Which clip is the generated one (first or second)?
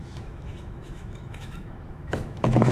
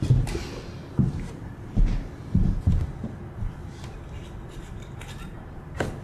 first